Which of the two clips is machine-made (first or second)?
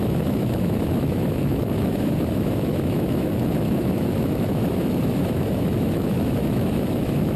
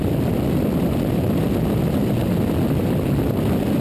first